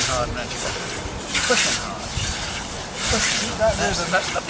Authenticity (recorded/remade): recorded